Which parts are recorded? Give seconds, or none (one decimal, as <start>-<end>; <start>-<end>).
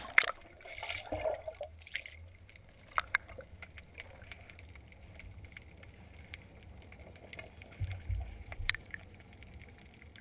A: 0.0-8.2; 9.2-10.2